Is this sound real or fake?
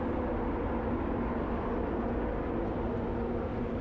real